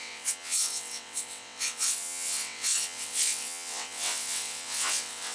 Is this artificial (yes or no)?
yes